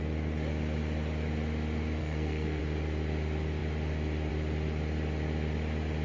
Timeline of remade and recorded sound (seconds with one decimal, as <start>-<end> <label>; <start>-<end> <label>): 0.0-2.0 recorded; 2.0-2.6 remade; 2.6-6.0 recorded